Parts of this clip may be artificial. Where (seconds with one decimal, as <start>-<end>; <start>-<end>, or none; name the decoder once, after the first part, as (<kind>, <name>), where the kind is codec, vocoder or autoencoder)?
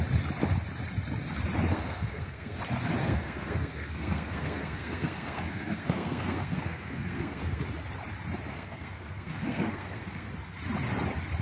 1.7-2.6 (codec, SNAC); 3.0-7.6; 8.5-10.3